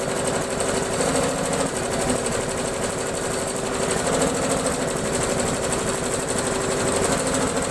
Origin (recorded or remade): recorded